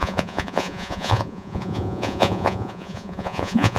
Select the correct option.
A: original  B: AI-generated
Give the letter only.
B